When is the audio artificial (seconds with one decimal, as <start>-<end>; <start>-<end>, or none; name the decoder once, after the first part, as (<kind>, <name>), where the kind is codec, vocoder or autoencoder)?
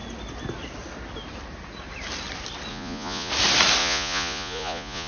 2.7-3.3 (vocoder, Vocos); 3.8-5.1